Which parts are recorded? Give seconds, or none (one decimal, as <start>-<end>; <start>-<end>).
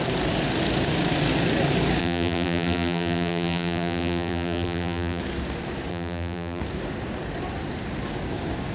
0.0-2.0; 5.2-5.9; 6.6-8.7